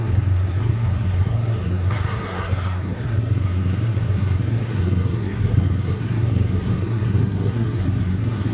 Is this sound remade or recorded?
remade